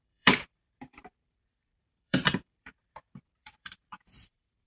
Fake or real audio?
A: fake